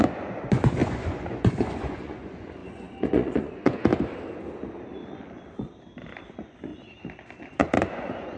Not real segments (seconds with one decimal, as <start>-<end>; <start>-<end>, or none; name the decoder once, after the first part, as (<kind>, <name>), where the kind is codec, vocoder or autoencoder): 0.0-3.9 (vocoder, Vocos); 6.3-6.7; 7.4-8.4